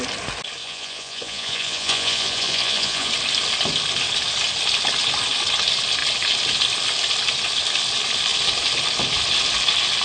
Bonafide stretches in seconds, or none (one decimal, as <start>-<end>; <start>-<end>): 0.0-0.6; 3.1-10.0